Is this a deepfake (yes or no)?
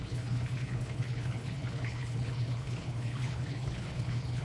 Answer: yes